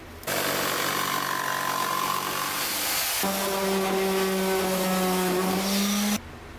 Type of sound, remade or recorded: recorded